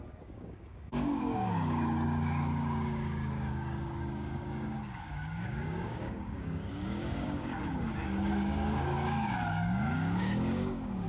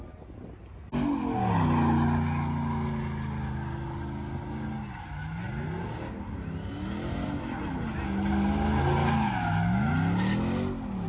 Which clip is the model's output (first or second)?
first